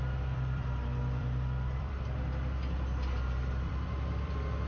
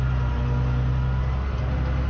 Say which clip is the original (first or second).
second